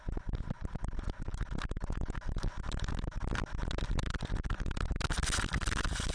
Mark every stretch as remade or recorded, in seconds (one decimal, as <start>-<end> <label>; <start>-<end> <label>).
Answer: 0.0-6.1 recorded